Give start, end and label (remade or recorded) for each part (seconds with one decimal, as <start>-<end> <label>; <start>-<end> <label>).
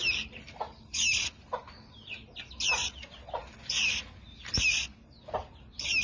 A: 0.0-6.0 recorded